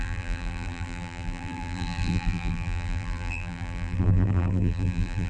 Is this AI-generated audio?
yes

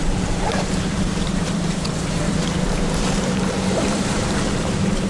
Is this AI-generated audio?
yes